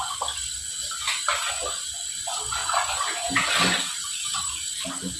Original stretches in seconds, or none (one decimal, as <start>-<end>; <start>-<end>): 0.0-5.2